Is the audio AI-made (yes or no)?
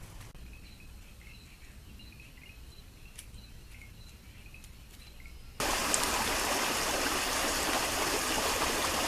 no